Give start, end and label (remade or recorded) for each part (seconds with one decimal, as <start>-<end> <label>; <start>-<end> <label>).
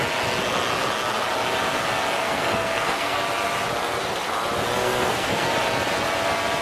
0.0-2.2 recorded; 2.2-3.2 remade; 3.2-4.8 recorded; 4.8-5.5 remade; 5.5-6.6 recorded